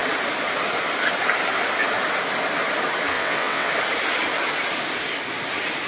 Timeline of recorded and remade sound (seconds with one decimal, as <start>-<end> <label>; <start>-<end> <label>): 0.0-3.1 recorded; 3.1-3.7 remade; 3.7-5.9 recorded